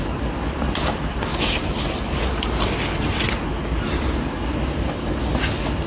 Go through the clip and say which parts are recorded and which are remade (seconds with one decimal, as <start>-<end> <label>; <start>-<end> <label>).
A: 0.0-5.9 recorded